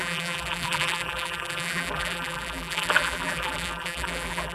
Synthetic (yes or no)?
yes